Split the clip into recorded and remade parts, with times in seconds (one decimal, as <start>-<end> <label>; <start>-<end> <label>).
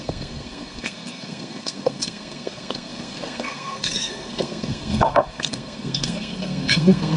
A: 0.0-7.2 remade